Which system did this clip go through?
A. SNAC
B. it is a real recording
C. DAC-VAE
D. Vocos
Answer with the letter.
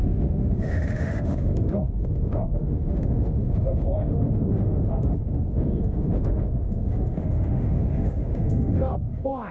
C